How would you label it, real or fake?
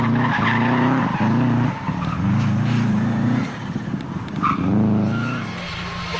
real